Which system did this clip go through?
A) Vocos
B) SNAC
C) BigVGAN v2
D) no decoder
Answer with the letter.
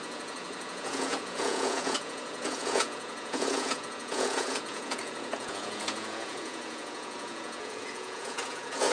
A